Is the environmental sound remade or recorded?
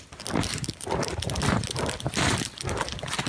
recorded